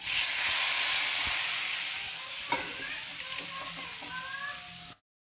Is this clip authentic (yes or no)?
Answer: yes